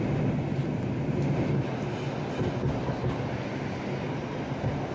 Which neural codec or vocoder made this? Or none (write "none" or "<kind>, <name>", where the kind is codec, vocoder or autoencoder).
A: none